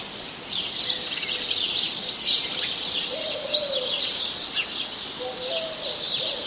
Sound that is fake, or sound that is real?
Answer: real